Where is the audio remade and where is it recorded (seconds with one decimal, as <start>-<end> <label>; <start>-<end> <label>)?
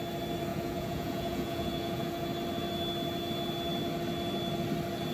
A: 0.0-0.5 recorded; 0.5-2.1 remade; 2.1-5.1 recorded